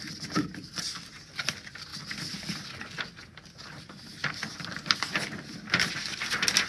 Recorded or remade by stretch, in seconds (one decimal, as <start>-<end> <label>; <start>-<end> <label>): 0.0-6.7 recorded

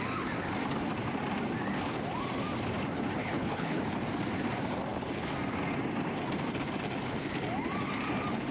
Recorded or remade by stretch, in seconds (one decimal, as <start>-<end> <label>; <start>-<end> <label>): 0.0-3.2 recorded; 3.2-3.8 remade; 3.8-8.5 recorded

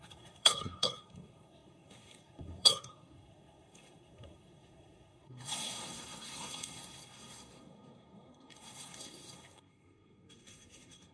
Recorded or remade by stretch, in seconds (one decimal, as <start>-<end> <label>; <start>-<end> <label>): 0.0-11.1 remade

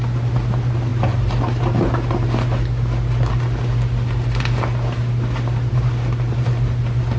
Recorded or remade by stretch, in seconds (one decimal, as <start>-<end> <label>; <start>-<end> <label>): 0.0-7.2 recorded

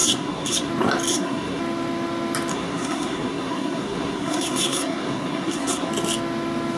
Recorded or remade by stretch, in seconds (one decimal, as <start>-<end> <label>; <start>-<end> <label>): 0.0-0.7 remade; 0.7-1.1 recorded; 1.1-1.6 remade; 1.6-2.5 recorded; 2.5-5.9 remade; 5.9-6.8 recorded

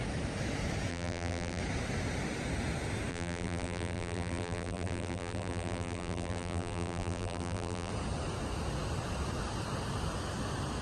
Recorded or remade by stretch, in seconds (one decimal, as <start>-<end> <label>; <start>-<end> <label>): 0.0-0.9 recorded; 0.9-1.6 remade; 1.6-3.1 recorded; 3.1-7.9 remade; 7.9-10.8 recorded

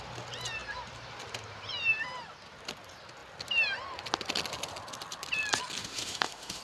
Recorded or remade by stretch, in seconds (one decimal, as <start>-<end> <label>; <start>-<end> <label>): 0.0-5.8 recorded; 5.8-6.6 remade

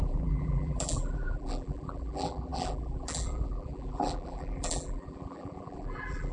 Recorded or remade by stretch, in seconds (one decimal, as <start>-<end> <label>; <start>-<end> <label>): 0.0-6.3 remade